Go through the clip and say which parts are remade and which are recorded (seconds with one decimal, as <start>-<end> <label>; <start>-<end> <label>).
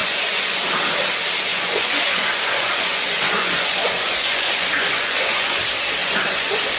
0.0-0.6 remade; 0.6-1.5 recorded; 1.5-5.6 remade; 5.6-6.0 recorded; 6.0-6.8 remade